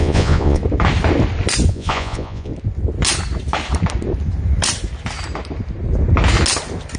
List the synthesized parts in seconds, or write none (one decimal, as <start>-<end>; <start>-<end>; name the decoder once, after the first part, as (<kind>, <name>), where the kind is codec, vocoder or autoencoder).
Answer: 0.0-0.6 (vocoder, Vocos); 1.7-2.5

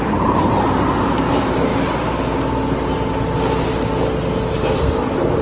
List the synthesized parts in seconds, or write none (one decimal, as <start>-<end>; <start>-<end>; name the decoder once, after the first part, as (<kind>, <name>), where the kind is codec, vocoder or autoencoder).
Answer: 0.0-1.7 (vocoder, BigVGAN v2); 4.5-5.4